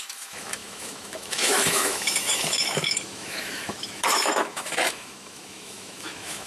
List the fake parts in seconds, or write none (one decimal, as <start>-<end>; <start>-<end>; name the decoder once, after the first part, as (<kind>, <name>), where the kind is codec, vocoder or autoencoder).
0.0-6.5 (autoencoder, DAC-VAE)